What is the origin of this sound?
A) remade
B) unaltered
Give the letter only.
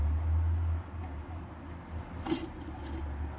B